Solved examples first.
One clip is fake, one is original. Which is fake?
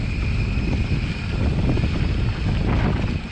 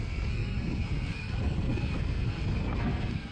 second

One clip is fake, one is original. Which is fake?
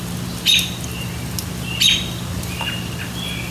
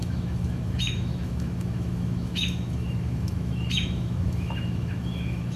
second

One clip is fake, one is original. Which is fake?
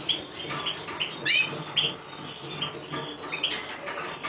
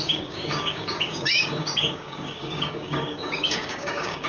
second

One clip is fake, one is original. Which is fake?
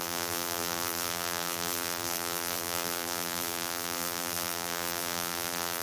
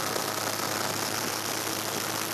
first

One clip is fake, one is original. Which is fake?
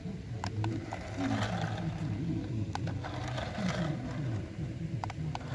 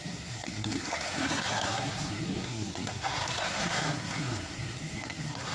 second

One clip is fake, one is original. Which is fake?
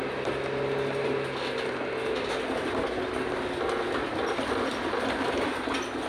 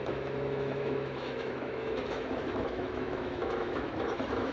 second